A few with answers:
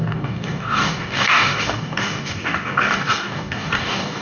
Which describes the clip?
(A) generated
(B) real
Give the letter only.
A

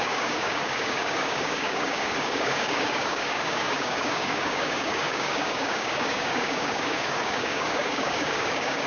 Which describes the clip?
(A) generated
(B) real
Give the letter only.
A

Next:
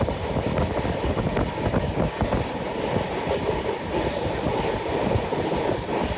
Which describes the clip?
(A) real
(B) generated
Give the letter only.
A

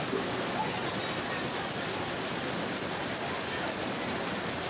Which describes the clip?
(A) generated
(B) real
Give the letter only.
B